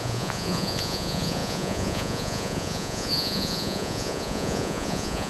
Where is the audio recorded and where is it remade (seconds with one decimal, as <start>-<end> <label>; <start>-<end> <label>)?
0.0-5.3 remade